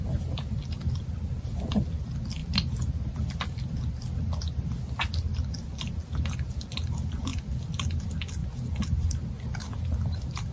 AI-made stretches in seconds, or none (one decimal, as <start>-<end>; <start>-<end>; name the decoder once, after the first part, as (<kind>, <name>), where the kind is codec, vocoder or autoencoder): none